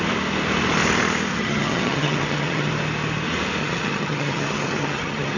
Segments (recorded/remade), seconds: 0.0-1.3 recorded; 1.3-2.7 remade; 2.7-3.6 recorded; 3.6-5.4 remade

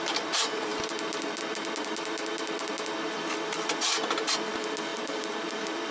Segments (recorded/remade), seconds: 0.0-4.9 recorded; 4.9-5.5 remade; 5.5-5.9 recorded

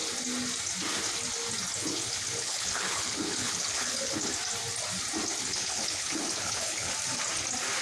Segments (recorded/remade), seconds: 0.0-1.8 recorded; 1.8-4.3 remade; 4.3-5.4 recorded; 5.4-6.9 remade; 6.9-7.8 recorded

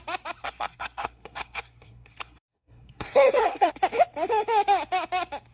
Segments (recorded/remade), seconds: 0.0-0.4 recorded; 0.4-3.7 remade; 3.7-5.5 recorded

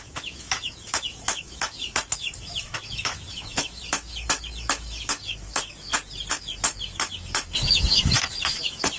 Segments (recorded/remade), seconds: 0.0-5.9 remade; 5.9-6.4 recorded; 6.4-9.0 remade

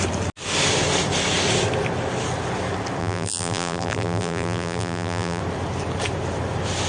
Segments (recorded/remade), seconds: 0.0-3.0 recorded; 3.0-5.4 remade; 5.4-6.9 recorded

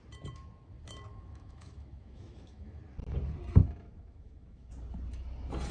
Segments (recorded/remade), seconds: 0.0-1.1 recorded; 1.1-2.8 remade; 2.8-3.6 recorded; 3.6-4.7 remade; 4.7-5.7 recorded

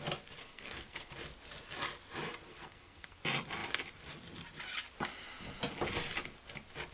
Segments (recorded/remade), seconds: 0.0-0.4 recorded; 0.4-1.1 remade; 1.1-2.5 recorded; 2.5-3.2 remade; 3.2-6.9 recorded